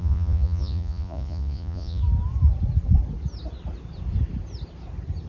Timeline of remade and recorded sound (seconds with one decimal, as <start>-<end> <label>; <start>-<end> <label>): 0.0-2.0 remade; 2.0-5.3 recorded